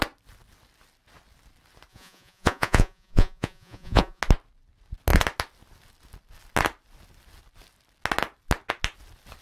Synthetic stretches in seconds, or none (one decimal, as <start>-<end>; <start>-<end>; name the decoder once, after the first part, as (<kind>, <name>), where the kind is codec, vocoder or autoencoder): 1.9-4.2 (vocoder, Vocos)